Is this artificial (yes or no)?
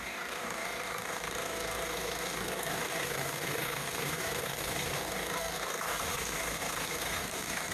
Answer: yes